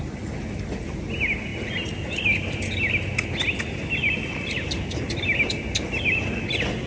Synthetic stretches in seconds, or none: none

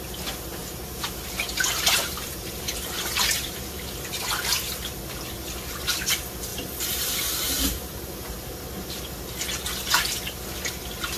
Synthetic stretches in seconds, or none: 0.6-4.2 (vocoder, BigVGAN v2); 6.5-9.0

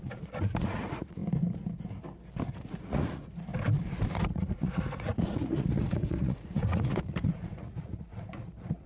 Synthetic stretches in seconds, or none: 0.0-1.2 (vocoder, Vocos); 2.5-3.5; 4.1-8.9

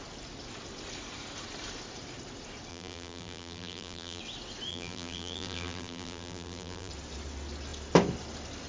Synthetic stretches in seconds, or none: 2.7-4.2 (vocoder, BigVGAN v2); 4.7-6.9

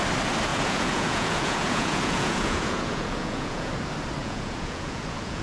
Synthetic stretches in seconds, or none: 0.5-3.7 (vocoder, Vocos); 4.2-5.4

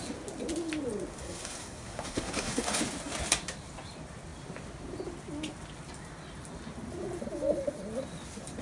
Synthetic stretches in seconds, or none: 1.2-2.8 (codec, SNAC)